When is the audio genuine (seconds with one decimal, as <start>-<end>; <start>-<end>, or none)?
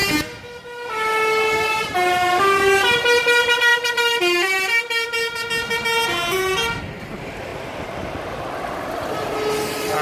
0.0-10.0